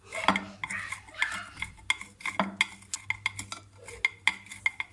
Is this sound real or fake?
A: real